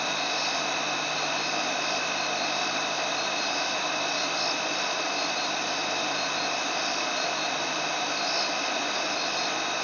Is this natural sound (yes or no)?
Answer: yes